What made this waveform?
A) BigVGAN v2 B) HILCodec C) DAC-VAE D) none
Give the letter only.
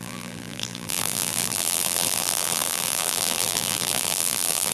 A